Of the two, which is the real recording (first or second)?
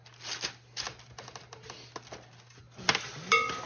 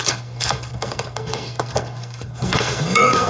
first